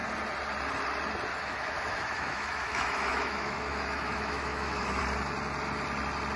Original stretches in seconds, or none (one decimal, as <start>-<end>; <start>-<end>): 0.0-1.3; 5.0-6.4